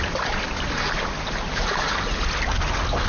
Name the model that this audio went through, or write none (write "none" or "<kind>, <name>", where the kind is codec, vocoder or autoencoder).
none